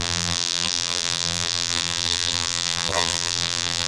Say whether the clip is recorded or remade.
remade